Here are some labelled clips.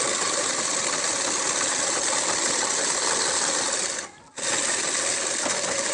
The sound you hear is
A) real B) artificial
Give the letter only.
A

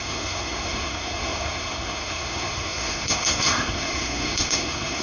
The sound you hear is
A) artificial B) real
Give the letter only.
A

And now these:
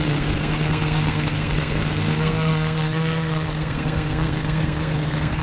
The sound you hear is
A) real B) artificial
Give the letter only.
B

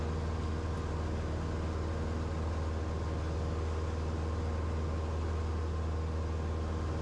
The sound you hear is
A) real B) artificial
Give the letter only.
A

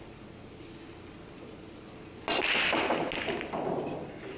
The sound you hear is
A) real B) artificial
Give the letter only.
A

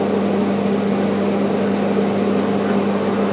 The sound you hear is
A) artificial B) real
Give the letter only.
B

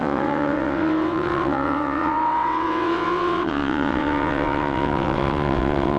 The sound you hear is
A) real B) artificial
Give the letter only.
B